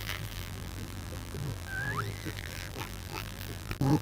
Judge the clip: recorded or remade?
remade